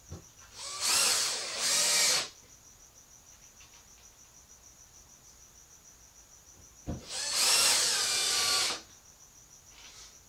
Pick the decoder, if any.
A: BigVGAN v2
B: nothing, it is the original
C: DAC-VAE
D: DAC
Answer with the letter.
B